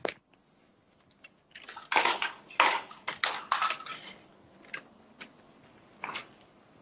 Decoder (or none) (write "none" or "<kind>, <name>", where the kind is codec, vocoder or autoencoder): none